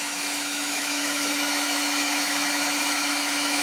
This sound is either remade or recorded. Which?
remade